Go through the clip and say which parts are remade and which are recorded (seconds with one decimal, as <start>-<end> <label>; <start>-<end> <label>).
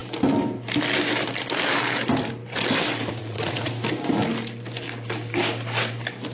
0.0-3.2 recorded; 3.2-3.7 remade; 3.7-6.3 recorded